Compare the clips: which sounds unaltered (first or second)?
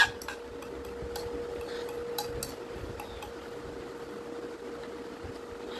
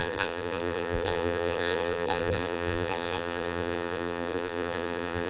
first